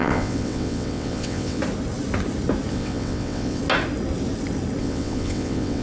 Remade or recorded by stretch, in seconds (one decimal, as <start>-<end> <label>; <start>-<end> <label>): 0.0-1.6 remade; 1.6-2.7 recorded; 2.7-3.6 remade; 3.6-4.8 recorded; 4.8-5.8 remade